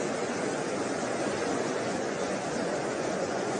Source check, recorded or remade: remade